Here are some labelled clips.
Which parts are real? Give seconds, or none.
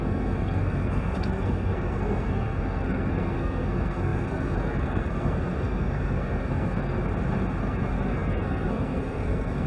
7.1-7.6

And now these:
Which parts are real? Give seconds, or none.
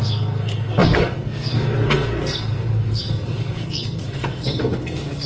none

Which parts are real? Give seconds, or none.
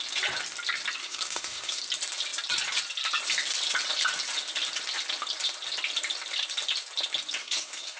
0.0-1.0; 1.8-7.4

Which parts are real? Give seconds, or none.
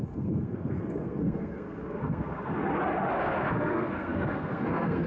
2.6-3.1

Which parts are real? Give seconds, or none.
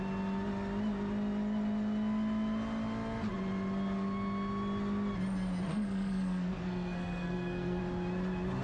0.0-5.7; 7.8-8.6